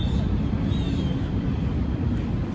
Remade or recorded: recorded